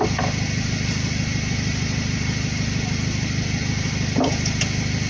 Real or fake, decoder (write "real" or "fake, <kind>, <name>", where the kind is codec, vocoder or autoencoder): real